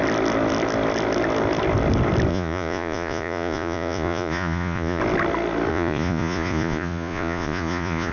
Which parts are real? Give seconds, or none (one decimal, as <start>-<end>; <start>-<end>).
0.0-2.3; 5.0-5.7